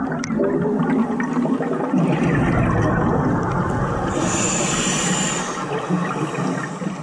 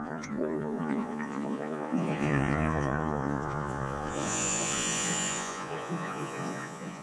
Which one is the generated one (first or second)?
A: second